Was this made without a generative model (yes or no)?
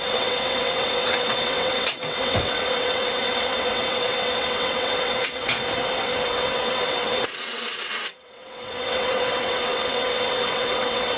no